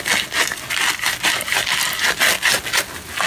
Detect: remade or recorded recorded